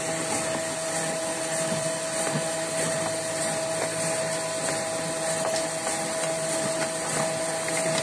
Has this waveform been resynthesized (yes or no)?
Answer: no